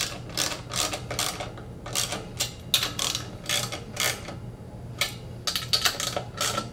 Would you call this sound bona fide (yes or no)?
yes